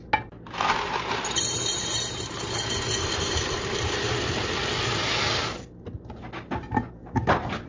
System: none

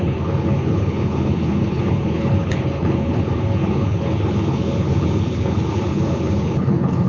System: codec, HILCodec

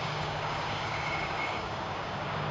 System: codec, DAC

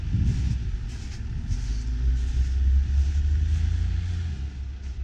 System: none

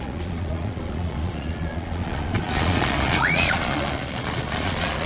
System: vocoder, Vocos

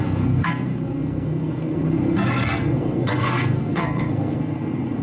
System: codec, SNAC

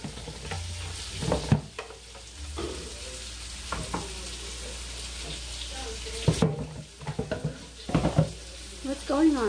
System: none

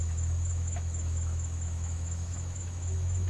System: autoencoder, DAC-VAE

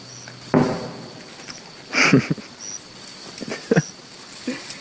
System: none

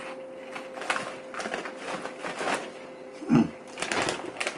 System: none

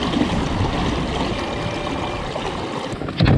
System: none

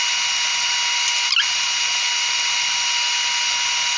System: none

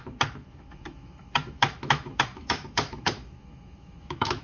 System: autoencoder, DAC-VAE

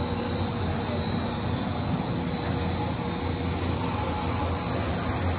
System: none